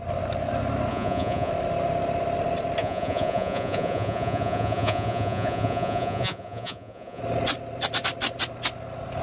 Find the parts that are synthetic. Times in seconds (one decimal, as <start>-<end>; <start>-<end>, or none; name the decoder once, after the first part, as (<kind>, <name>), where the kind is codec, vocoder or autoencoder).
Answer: 0.9-1.5 (vocoder, Vocos); 2.8-7.2